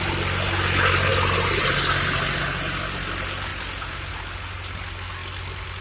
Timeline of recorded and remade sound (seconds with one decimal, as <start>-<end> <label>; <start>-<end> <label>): 0.0-5.8 recorded